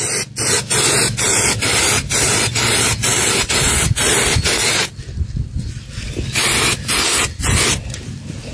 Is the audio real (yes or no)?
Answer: yes